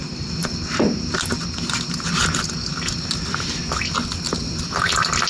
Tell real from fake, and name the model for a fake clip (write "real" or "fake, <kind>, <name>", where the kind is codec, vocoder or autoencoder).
real